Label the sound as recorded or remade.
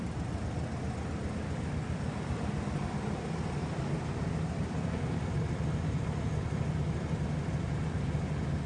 recorded